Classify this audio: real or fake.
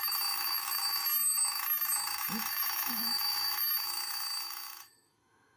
fake